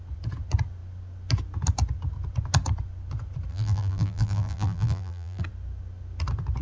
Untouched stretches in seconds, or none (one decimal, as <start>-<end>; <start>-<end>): 0.0-3.5; 5.4-6.6